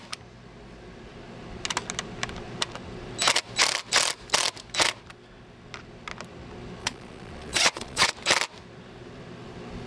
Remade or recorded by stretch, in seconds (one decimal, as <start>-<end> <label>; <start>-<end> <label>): 0.0-6.8 recorded; 6.8-8.1 remade; 8.1-9.9 recorded